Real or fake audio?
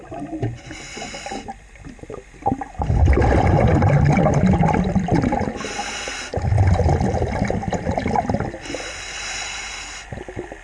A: real